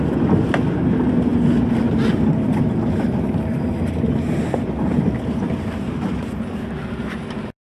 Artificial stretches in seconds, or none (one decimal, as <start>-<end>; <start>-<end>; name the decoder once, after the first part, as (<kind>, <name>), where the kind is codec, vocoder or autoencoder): none